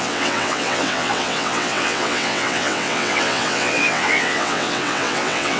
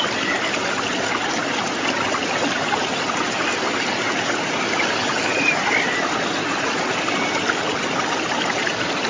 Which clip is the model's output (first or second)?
first